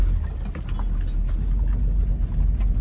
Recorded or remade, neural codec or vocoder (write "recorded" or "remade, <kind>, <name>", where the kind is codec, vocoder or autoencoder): recorded